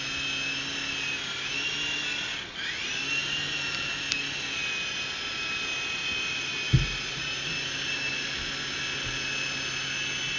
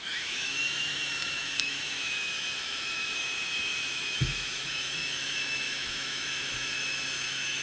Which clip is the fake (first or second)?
second